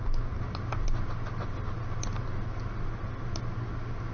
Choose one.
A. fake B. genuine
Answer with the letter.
B